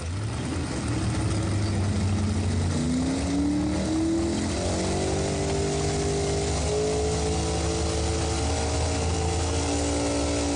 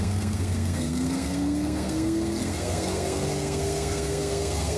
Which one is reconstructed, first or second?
second